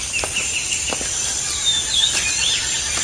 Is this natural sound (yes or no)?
yes